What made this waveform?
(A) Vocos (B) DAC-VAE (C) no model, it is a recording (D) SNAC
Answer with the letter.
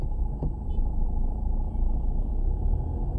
C